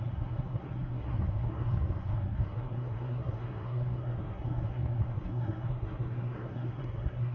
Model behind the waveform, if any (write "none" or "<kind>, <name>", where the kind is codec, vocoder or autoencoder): codec, SNAC